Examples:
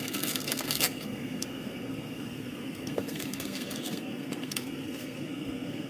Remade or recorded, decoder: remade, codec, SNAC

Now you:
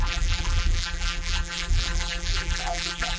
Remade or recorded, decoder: remade, vocoder, BigVGAN v2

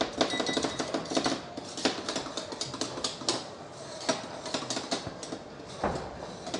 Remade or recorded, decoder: recorded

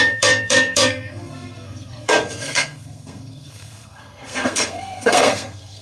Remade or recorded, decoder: remade, codec, SNAC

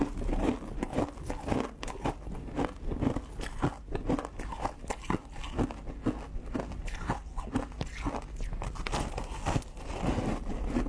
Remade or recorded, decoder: recorded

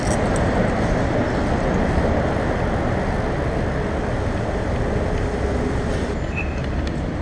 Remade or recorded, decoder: recorded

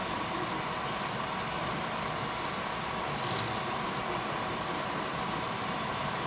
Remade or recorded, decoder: remade, vocoder, BigVGAN v2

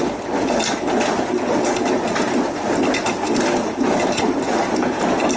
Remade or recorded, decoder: recorded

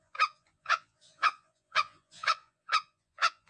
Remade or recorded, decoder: remade, vocoder, Vocos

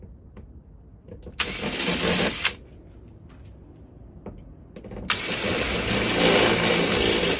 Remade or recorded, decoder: recorded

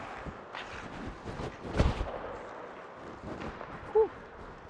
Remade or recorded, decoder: recorded